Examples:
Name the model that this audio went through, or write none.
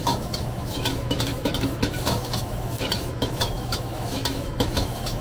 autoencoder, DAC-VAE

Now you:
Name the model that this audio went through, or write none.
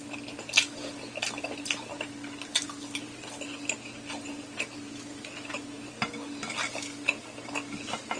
none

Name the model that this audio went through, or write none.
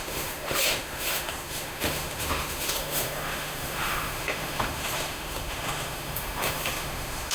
autoencoder, DAC-VAE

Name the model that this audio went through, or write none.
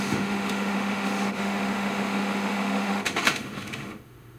autoencoder, DAC-VAE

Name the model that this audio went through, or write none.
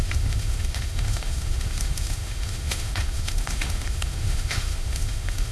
autoencoder, DAC-VAE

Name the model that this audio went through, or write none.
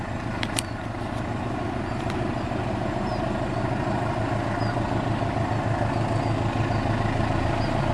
none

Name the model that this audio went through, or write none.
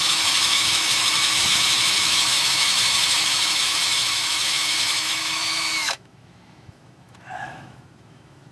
autoencoder, DAC-VAE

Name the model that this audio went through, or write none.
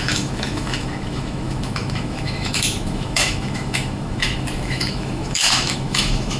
autoencoder, DAC-VAE